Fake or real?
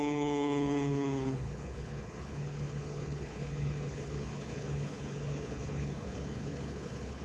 fake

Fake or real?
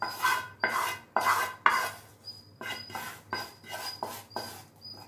real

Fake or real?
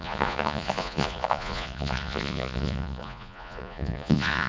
fake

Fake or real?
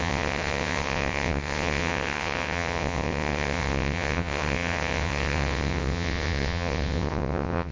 fake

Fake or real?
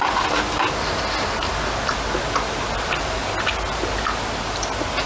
real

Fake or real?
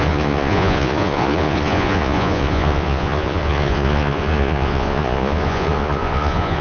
fake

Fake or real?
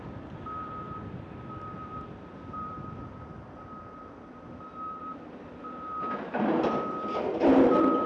fake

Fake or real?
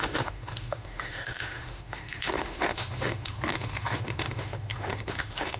fake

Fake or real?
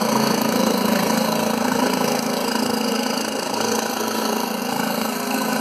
fake